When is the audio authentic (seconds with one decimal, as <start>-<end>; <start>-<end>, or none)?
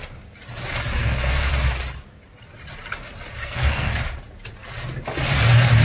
0.0-1.0; 1.5-3.4; 3.9-5.8